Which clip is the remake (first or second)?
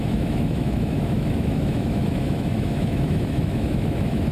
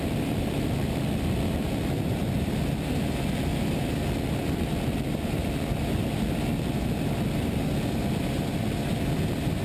first